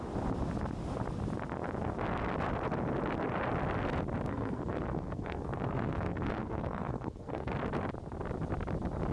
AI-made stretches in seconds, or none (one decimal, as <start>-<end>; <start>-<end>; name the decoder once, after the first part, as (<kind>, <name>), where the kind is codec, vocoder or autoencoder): 4.3-7.5 (codec, SNAC)